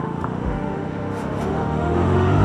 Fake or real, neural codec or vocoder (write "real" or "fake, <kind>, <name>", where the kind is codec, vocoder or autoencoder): fake, autoencoder, DAC-VAE